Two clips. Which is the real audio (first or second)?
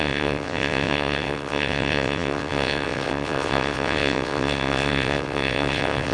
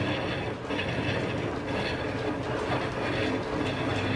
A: second